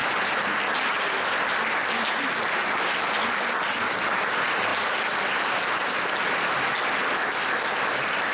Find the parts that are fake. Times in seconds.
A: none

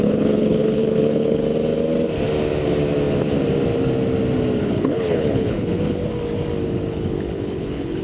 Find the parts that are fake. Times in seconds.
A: 0.0-1.4 (codec, HILCodec); 4.6-6.0; 6.9-8.0

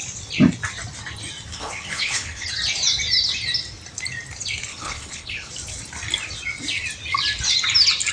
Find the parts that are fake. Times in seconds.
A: 1.5-2.5 (codec, HILCodec); 4.7-5.5

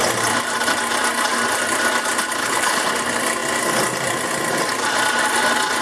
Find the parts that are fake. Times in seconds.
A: 2.4-2.9 (codec, HILCodec)

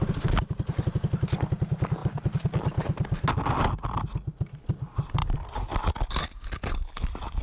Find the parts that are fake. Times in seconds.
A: none

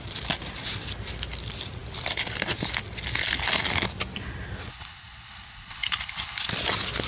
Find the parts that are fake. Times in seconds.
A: 4.7-6.5 (codec, HILCodec)

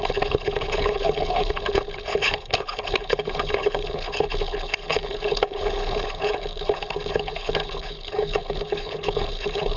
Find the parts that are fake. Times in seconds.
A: 0.0-9.8 (codec, HILCodec)

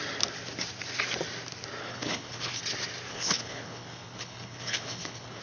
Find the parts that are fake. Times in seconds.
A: 1.8-2.6 (codec, HILCodec); 3.1-5.4